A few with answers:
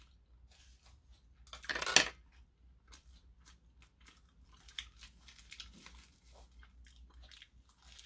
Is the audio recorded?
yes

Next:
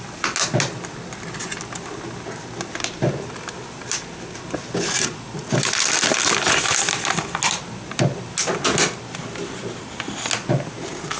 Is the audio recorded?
yes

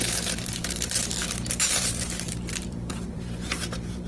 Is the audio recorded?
no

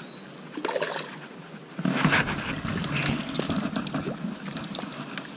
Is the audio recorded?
yes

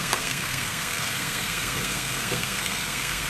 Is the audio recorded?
no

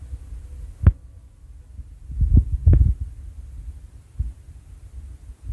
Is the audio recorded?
yes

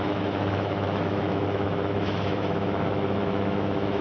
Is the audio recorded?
no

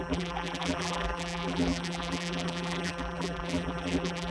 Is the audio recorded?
no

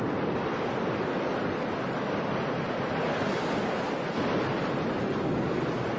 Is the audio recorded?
yes